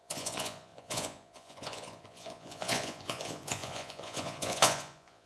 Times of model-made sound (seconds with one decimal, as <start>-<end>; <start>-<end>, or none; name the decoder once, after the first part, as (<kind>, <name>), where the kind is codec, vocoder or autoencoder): 0.0-5.3 (vocoder, Vocos)